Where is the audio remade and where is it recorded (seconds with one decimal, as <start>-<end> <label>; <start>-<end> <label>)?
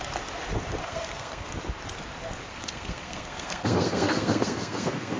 0.0-0.8 recorded; 0.8-1.5 remade; 1.5-2.5 recorded; 2.5-5.2 remade